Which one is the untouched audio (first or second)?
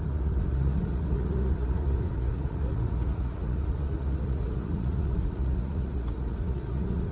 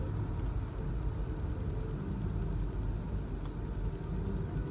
second